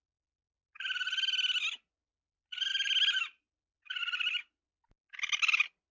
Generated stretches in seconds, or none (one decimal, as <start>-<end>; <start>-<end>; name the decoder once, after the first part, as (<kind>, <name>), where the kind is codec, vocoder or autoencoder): none